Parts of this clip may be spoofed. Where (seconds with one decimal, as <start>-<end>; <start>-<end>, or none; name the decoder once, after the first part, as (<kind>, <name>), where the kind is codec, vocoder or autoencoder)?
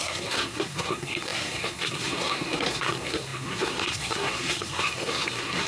0.0-5.7 (codec, SNAC)